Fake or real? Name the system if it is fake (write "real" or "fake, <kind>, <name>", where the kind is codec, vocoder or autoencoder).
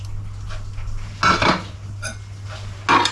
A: real